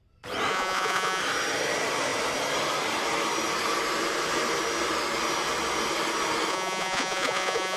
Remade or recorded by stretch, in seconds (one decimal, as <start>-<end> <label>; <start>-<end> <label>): 0.0-0.5 recorded; 0.5-1.2 remade; 1.2-6.5 recorded; 6.5-7.8 remade